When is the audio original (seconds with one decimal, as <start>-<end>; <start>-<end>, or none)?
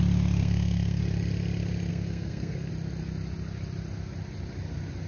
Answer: 0.0-0.4; 1.0-1.9; 2.7-5.1